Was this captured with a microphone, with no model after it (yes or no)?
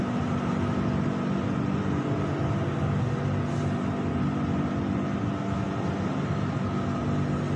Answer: yes